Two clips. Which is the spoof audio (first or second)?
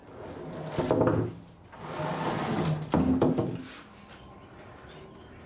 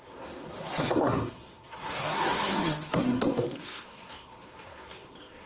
second